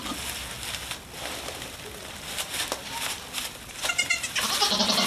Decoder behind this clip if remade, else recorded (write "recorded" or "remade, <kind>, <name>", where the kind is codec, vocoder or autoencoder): recorded